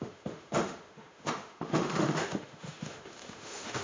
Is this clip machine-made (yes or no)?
yes